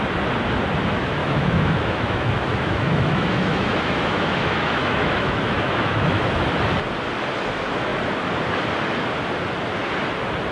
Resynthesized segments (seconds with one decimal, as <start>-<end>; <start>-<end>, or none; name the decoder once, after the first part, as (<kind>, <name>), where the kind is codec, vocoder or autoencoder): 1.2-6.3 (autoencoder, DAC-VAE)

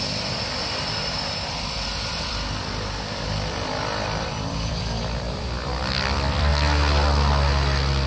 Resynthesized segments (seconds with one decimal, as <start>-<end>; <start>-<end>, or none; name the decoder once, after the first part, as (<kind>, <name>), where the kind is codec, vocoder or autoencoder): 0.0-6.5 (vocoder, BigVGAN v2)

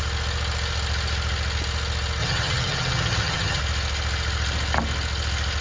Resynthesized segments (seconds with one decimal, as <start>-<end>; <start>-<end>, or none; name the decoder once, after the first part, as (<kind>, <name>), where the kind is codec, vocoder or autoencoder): 2.2-3.6 (vocoder, HiFi-GAN)

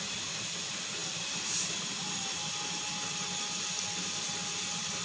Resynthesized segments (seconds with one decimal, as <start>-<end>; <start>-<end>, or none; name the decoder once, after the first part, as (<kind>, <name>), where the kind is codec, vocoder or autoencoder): 1.0-1.9 (vocoder, BigVGAN v2)

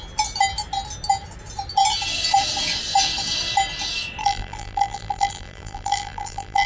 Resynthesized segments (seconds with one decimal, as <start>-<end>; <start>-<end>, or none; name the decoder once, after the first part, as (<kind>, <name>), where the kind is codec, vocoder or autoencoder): 4.2-6.7 (vocoder, BigVGAN v2)

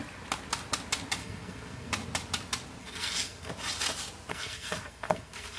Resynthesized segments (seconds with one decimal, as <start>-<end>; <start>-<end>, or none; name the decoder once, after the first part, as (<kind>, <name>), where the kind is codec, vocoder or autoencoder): 1.2-1.9 (codec, SNAC); 2.8-3.5; 4.3-5.6

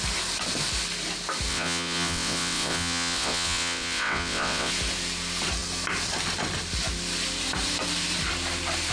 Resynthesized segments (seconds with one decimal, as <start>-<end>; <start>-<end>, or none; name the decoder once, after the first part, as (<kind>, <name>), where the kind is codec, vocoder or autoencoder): 1.5-4.7 (vocoder, WaveNeXt)

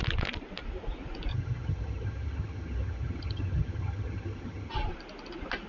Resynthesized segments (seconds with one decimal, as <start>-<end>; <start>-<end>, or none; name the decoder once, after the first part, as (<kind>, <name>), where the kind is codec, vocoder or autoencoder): 1.3-4.7 (vocoder, HiFi-GAN)